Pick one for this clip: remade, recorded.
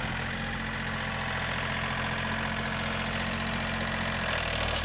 recorded